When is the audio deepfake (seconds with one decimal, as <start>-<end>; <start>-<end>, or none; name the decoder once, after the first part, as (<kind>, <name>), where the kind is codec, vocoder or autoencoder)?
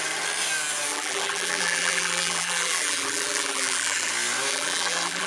0.9-4.1 (vocoder, BigVGAN v2); 4.5-5.3